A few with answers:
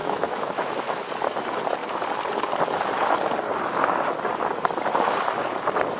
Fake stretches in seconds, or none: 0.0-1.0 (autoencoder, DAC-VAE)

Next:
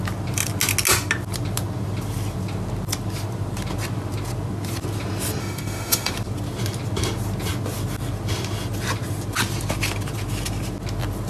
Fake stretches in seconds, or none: 5.4-6.1 (autoencoder, DAC-VAE)